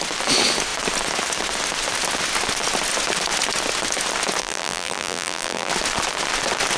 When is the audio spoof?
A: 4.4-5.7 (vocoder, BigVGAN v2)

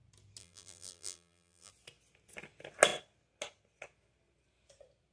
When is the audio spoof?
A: 0.4-1.7 (vocoder, BigVGAN v2)

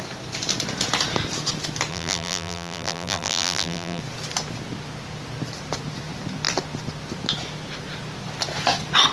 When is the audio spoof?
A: 1.9-4.0 (vocoder, BigVGAN v2)

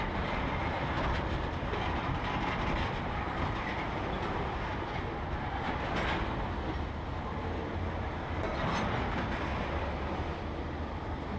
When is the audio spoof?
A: 0.0-4.7 (vocoder, BigVGAN v2); 9.7-11.4

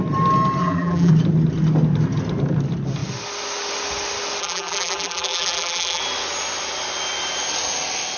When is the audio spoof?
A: 0.6-1.1 (vocoder, BigVGAN v2); 4.4-6.0

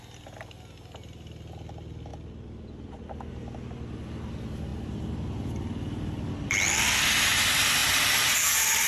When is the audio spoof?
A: none

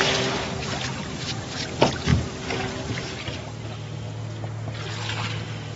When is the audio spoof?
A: none